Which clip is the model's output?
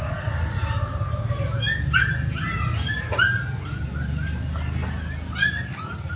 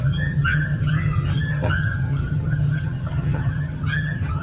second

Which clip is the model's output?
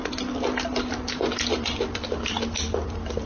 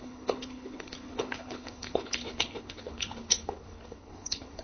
second